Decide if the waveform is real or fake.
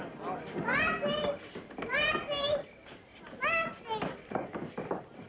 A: real